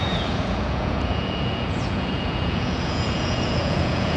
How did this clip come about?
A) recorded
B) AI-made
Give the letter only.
B